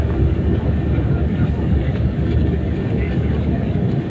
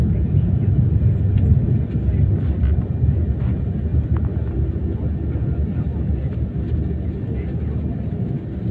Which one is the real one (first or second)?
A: second